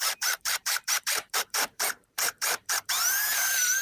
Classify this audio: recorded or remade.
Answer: remade